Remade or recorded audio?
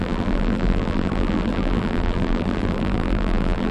remade